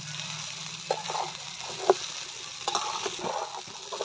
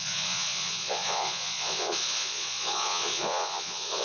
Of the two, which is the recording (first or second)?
first